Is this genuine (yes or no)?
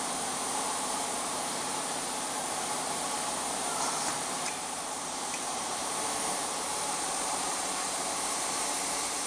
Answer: no